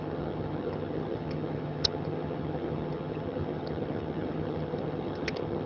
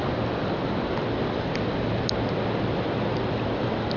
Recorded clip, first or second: second